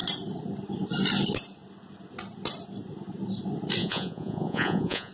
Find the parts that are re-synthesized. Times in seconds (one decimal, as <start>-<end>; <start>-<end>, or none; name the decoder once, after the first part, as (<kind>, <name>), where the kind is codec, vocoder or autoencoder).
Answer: 3.8-5.1 (vocoder, Vocos)